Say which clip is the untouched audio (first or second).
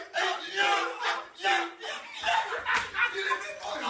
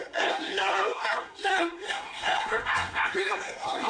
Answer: first